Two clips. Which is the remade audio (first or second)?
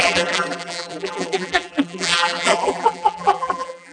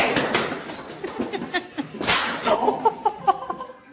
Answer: first